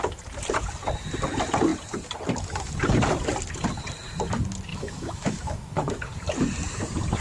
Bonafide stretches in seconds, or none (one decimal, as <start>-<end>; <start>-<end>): 0.0-4.7; 6.0-7.2